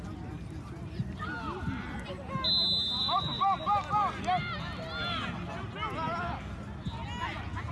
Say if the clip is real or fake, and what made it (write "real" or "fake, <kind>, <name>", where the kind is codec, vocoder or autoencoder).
real